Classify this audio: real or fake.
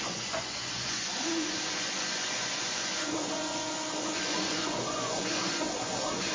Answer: fake